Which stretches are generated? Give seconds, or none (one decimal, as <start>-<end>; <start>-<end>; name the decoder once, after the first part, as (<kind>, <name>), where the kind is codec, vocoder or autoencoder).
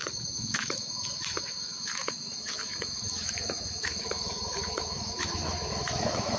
0.0-6.4 (autoencoder, DAC-VAE)